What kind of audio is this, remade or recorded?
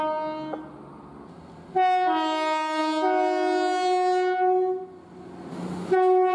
recorded